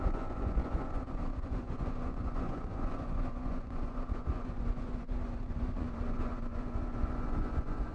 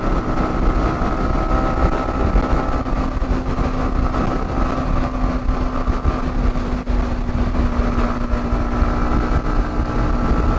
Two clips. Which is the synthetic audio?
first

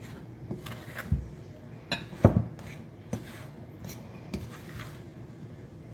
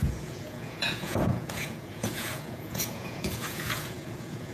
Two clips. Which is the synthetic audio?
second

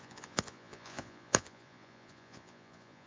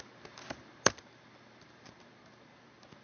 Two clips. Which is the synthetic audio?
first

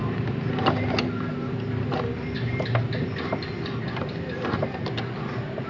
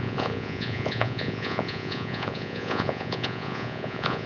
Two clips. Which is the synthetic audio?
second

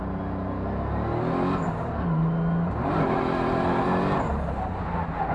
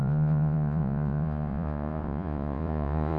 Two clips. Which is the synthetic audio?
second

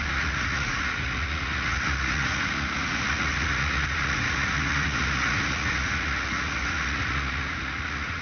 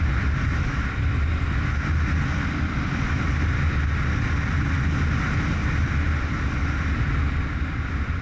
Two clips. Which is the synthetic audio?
first